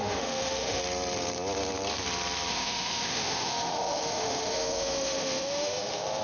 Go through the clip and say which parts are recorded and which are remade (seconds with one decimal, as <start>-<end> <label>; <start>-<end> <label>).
0.0-0.8 remade; 0.8-2.5 recorded; 2.5-6.2 remade